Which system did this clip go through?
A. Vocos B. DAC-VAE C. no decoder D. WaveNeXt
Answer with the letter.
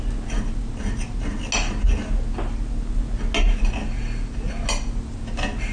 C